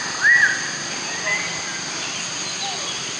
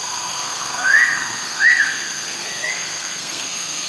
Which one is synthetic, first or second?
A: second